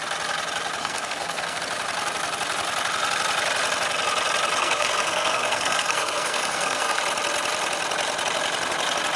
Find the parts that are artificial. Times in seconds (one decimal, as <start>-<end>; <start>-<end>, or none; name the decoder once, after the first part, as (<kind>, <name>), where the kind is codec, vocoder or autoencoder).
0.8-1.6 (codec, SNAC); 4.6-7.0